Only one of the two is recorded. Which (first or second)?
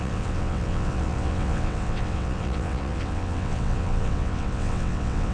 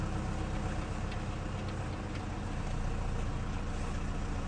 second